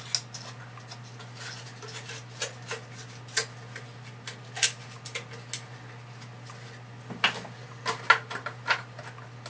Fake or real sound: real